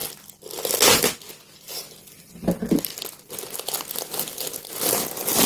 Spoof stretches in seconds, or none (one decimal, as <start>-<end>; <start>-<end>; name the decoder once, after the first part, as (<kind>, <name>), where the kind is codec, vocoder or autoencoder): none